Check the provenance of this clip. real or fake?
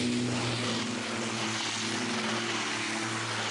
real